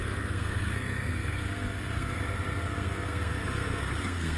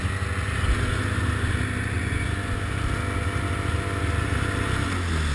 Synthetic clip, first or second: first